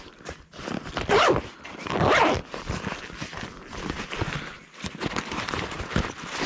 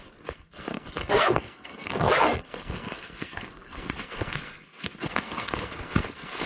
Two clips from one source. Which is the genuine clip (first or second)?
first